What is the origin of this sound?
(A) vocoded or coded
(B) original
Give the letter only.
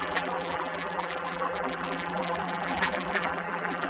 A